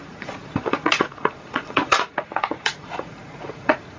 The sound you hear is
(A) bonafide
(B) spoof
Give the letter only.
B